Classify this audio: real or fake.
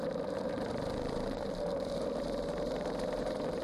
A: fake